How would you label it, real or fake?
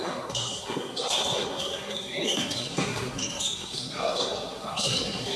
fake